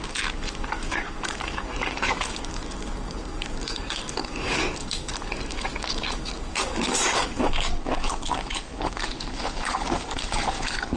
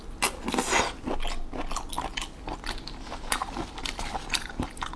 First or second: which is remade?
first